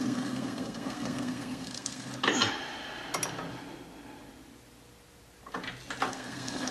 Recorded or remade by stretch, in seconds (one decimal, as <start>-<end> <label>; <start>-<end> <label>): 0.0-2.1 remade; 2.1-6.1 recorded; 6.1-6.7 remade